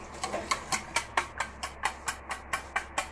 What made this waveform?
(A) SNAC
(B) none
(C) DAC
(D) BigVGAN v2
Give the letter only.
B